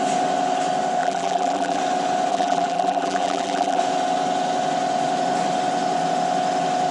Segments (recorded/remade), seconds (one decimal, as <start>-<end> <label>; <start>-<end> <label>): 0.0-1.0 recorded; 1.0-1.8 remade; 1.8-2.3 recorded; 2.3-3.8 remade; 3.8-6.9 recorded